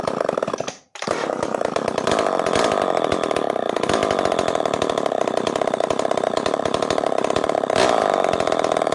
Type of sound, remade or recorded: recorded